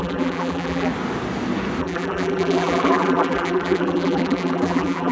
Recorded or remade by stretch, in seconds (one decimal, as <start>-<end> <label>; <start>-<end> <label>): 0.0-0.9 remade; 0.9-1.8 recorded; 1.8-5.1 remade